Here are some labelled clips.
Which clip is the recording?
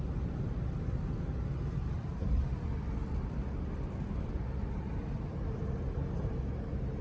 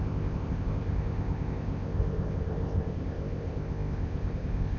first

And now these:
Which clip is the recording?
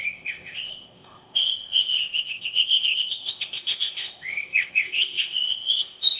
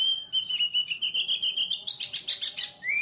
second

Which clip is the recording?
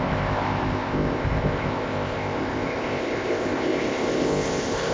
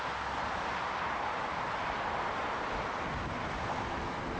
second